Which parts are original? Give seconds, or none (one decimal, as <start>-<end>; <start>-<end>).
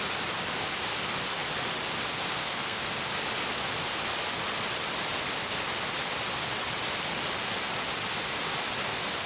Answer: 0.0-2.4; 2.9-9.3